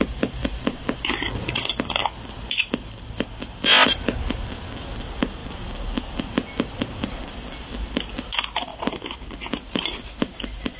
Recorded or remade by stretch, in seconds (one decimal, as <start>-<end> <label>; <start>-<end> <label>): 0.0-8.7 recorded; 8.7-9.4 remade; 9.4-10.8 recorded